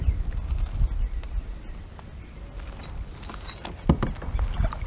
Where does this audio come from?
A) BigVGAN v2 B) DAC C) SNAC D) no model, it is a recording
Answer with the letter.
D